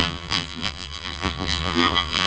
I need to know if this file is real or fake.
fake